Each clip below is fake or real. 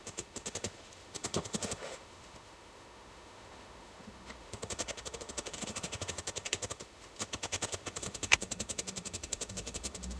fake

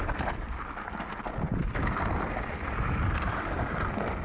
real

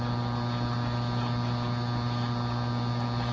real